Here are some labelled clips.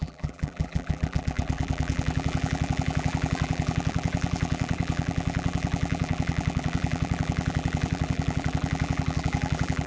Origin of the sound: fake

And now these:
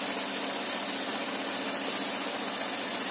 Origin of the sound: real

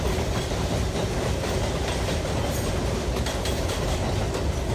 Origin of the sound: real